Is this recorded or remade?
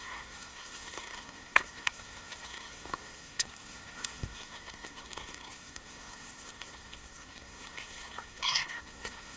remade